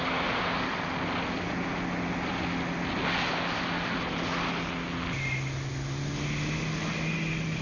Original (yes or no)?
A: yes